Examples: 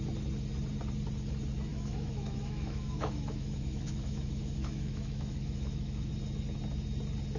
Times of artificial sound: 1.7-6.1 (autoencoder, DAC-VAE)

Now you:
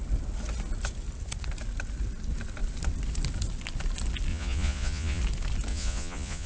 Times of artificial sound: 4.3-5.2 (vocoder, Vocos); 5.7-6.5

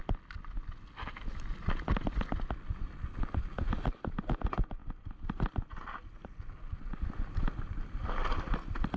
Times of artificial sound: none

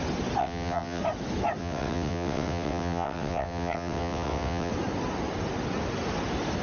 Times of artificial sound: 0.4-1.0 (vocoder, WaveNeXt); 1.6-4.7

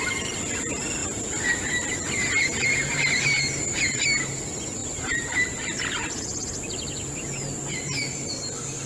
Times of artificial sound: 1.0-2.9 (vocoder, BigVGAN v2)